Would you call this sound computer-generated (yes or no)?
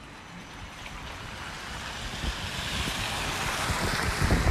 no